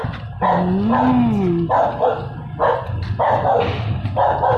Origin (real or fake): real